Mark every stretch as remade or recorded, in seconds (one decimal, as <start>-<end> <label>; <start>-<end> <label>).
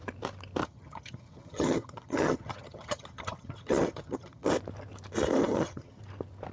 0.0-0.6 recorded; 0.6-4.5 remade; 4.5-5.4 recorded; 5.4-6.0 remade; 6.0-6.5 recorded